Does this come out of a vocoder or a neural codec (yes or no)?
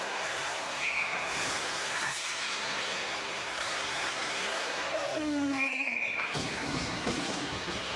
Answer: yes